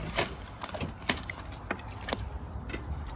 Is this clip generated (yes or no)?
no